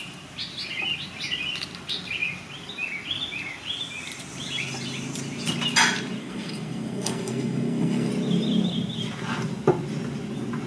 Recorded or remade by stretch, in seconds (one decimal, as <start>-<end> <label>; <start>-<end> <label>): 0.0-6.2 recorded; 6.2-8.1 remade; 8.1-10.7 recorded